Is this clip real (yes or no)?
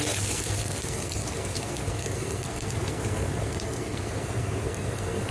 no